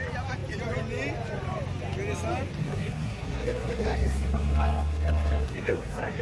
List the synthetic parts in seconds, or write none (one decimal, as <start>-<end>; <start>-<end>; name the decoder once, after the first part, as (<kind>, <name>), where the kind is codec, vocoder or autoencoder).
2.6-6.2 (codec, SNAC)